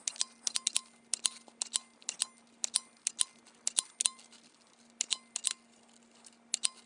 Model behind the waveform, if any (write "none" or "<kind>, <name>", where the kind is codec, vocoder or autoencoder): none